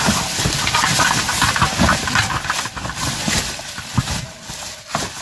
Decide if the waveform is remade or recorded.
recorded